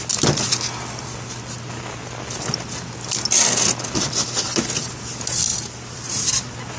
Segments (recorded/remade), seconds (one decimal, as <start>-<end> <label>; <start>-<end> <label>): 0.0-5.5 recorded; 5.5-6.3 remade; 6.3-6.8 recorded